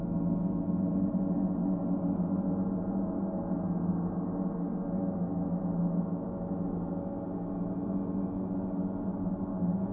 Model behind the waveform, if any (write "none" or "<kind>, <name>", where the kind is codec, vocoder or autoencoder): none